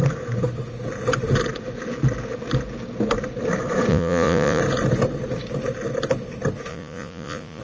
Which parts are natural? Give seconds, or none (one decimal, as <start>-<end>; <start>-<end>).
0.0-3.9; 4.6-6.7